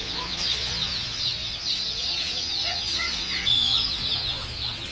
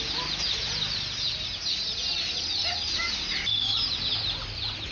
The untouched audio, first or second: second